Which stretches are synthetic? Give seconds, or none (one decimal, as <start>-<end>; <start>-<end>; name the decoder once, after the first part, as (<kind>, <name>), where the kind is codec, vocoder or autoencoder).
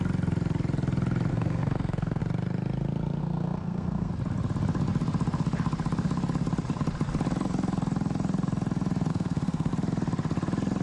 1.3-2.2 (codec, SNAC); 3.2-4.1; 9.1-9.7